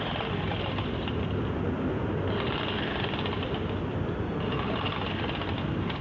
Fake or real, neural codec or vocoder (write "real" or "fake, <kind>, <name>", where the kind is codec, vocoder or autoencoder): real